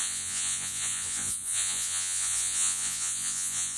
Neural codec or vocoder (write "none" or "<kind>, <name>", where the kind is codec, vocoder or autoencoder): vocoder, Vocos